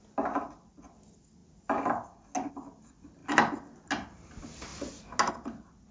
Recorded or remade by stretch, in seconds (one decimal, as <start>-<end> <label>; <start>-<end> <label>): 0.0-5.9 recorded